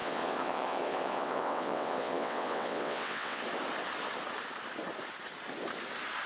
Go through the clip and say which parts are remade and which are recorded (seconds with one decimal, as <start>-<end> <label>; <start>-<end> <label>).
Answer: 0.0-3.4 remade; 3.4-6.3 recorded